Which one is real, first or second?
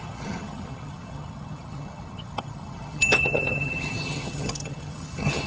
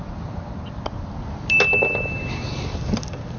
second